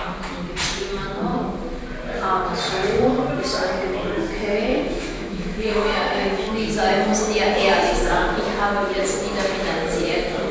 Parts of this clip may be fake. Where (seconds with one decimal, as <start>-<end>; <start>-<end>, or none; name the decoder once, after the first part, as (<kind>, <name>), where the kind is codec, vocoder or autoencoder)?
4.7-6.5 (autoencoder, DAC-VAE)